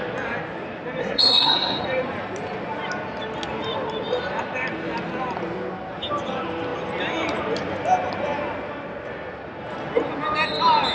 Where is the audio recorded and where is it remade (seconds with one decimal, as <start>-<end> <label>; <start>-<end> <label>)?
0.0-1.0 recorded; 1.0-1.8 remade; 1.8-10.9 recorded